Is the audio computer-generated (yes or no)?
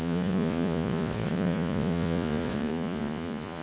yes